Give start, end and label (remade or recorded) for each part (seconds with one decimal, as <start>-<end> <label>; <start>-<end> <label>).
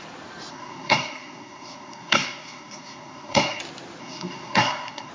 0.0-0.5 recorded; 0.5-3.6 remade; 3.6-4.0 recorded; 4.0-5.1 remade